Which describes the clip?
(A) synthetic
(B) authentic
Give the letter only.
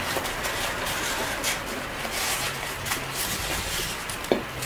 B